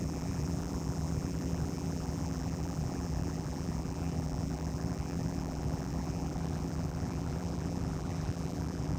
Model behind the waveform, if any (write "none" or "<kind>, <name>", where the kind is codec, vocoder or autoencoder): vocoder, BigVGAN v2